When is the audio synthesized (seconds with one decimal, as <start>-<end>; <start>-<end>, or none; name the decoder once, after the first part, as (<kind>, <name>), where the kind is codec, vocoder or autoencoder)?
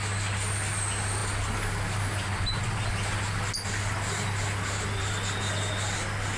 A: none